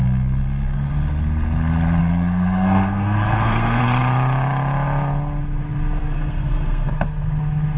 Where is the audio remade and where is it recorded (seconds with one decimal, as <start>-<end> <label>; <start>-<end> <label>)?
0.0-0.9 remade; 0.9-2.0 recorded; 2.0-3.8 remade; 3.8-6.0 recorded; 6.0-6.9 remade; 6.9-7.8 recorded